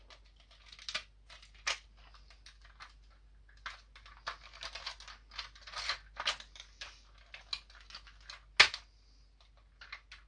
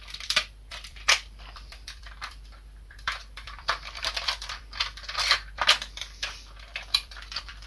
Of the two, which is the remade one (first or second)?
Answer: second